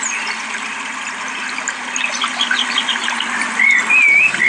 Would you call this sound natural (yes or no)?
yes